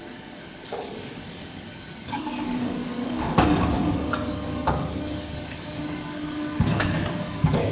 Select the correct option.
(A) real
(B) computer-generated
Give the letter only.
B